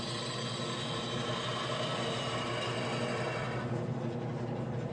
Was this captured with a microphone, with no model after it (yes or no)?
yes